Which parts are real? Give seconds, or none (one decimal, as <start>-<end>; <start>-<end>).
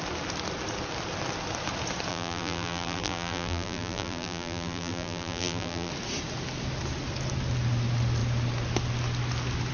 0.0-2.1; 5.9-9.7